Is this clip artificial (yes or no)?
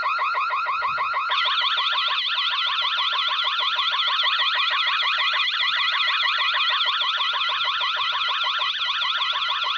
no